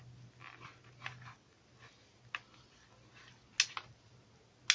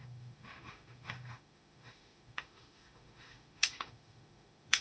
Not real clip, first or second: second